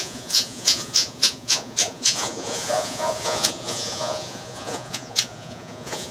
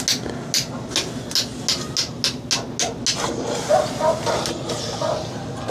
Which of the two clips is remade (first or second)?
first